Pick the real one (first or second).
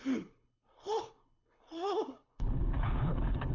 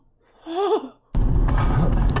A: second